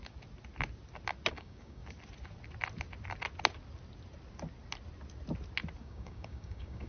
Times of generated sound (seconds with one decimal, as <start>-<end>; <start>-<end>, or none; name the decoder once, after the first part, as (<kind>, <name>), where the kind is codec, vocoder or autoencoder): 1.3-1.8 (codec, DAC); 5.8-6.9